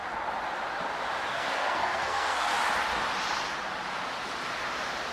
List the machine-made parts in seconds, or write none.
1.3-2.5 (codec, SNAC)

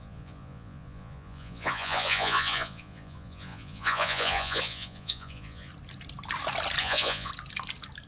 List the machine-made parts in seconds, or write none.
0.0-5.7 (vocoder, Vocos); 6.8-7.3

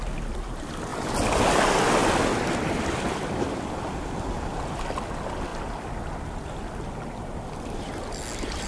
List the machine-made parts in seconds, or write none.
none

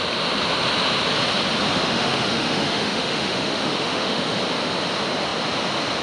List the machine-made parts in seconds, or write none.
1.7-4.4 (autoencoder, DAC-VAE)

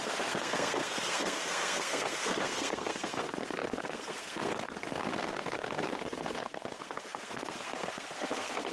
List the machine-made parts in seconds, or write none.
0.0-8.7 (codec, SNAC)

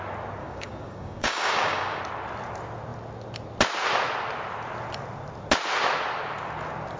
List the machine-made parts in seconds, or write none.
0.4-2.0 (codec, DAC)

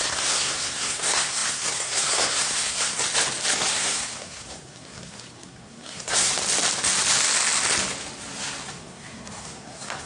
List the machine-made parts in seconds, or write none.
0.0-3.0 (codec, SNAC); 3.7-6.3; 8.7-10.1

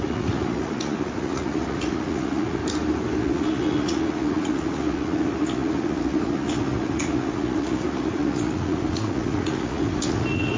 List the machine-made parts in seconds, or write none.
0.0-2.6 (vocoder, Vocos); 3.2-10.6